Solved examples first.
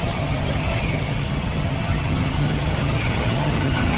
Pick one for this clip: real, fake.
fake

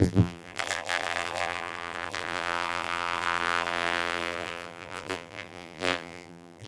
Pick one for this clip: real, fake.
fake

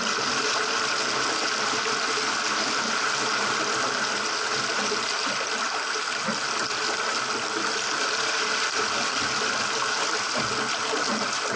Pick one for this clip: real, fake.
real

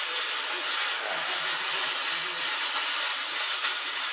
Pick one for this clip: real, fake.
real